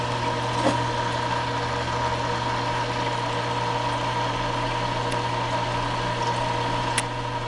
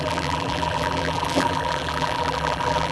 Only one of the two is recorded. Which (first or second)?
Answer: first